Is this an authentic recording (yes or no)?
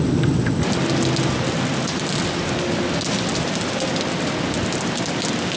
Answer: yes